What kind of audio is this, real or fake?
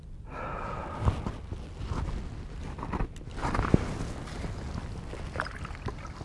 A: real